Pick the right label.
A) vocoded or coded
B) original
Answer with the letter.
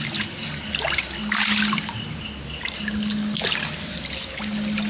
B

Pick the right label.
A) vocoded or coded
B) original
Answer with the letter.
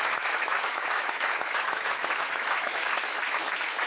A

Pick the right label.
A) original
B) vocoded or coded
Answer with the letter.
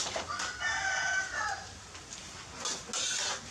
A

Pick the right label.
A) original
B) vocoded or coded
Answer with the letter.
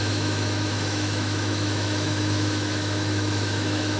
B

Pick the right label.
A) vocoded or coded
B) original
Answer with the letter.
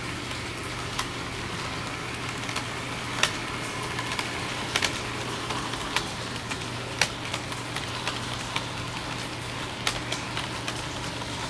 B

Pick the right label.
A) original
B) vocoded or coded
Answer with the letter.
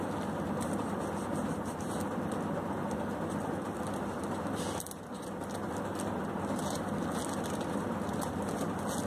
A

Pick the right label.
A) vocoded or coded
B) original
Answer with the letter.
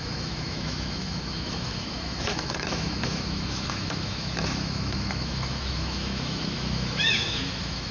A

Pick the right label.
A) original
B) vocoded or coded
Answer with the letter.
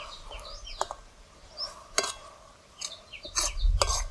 A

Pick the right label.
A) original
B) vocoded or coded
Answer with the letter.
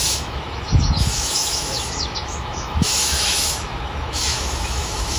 B